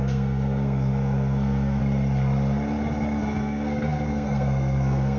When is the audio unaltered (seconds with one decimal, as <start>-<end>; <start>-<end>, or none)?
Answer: 1.8-3.2